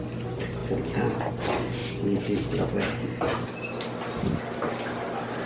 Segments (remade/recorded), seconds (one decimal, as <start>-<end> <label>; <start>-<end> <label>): 0.0-5.5 recorded

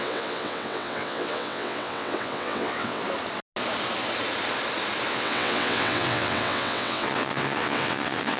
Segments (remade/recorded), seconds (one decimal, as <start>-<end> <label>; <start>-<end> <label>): 0.0-3.0 remade; 3.0-5.1 recorded; 5.1-8.4 remade